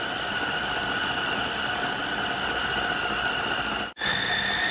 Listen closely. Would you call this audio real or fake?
real